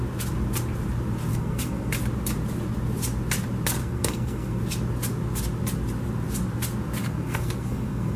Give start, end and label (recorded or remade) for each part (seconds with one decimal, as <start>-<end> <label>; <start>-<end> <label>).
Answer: 0.0-1.3 recorded; 1.3-1.9 remade; 1.9-3.8 recorded; 3.8-4.6 remade; 4.6-7.0 recorded; 7.0-8.2 remade